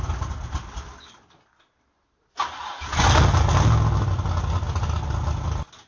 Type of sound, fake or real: real